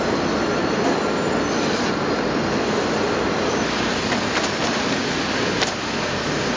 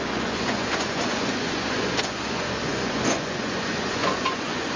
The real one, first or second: first